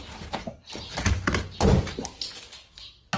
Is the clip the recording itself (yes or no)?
yes